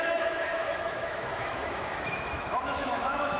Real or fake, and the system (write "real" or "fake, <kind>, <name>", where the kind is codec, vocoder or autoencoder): fake, autoencoder, DAC-VAE